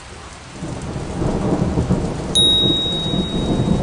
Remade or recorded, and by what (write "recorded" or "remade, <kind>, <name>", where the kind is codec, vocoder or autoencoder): recorded